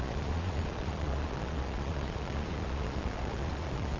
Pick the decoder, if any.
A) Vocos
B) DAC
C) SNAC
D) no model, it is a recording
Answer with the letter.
A